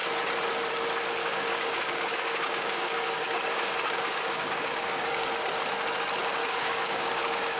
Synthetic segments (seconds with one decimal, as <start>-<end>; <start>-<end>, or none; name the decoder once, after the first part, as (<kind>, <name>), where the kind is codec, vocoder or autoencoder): 1.2-5.3 (codec, DAC); 6.4-7.6